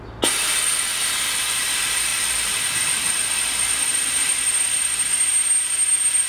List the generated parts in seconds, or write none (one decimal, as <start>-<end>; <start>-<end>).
none